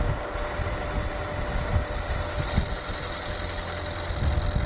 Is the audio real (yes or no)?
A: yes